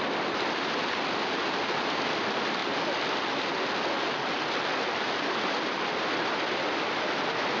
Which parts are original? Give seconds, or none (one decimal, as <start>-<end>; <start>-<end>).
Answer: 0.0-7.6